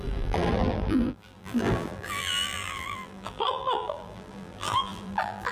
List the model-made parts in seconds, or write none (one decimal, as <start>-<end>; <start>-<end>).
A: 0.0-5.5